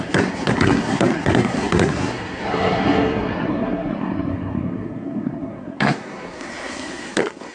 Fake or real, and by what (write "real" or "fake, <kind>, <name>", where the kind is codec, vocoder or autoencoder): fake, codec, SNAC